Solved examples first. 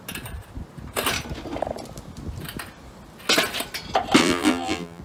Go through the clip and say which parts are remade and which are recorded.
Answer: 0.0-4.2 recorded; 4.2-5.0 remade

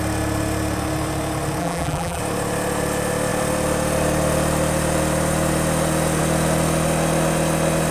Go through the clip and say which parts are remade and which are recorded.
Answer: 0.0-1.6 recorded; 1.6-2.2 remade; 2.2-7.9 recorded

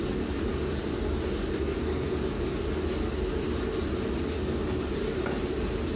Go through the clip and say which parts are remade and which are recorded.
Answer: 0.0-4.6 recorded; 4.6-5.3 remade; 5.3-6.0 recorded

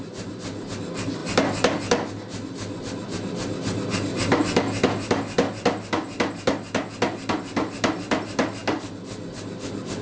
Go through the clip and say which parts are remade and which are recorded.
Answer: 0.0-10.0 recorded

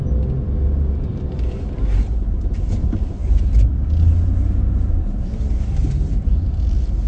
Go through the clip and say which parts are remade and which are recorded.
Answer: 0.0-1.1 recorded; 1.1-3.2 remade; 3.2-5.4 recorded; 5.4-7.1 remade

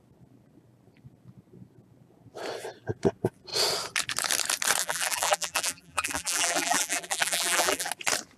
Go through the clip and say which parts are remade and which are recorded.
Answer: 0.0-4.8 recorded; 4.8-7.9 remade; 7.9-8.4 recorded

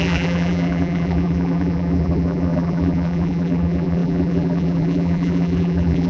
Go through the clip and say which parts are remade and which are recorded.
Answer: 0.0-6.1 remade